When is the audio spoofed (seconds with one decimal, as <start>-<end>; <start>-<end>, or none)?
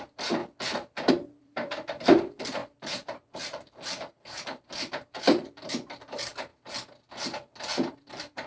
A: 0.0-0.4; 1.1-6.5; 7.9-8.5